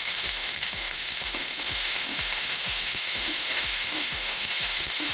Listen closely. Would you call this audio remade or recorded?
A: remade